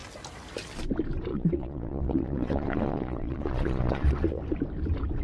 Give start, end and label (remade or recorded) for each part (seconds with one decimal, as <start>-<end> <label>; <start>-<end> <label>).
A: 0.0-1.3 recorded; 1.3-4.4 remade; 4.4-5.2 recorded